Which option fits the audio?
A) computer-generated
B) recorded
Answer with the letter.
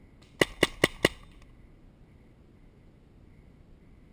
B